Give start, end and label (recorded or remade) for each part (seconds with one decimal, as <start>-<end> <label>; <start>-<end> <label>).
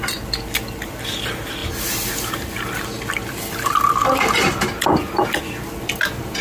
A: 0.0-1.6 remade; 1.6-3.1 recorded; 3.1-4.0 remade; 4.0-5.4 recorded; 5.4-6.4 remade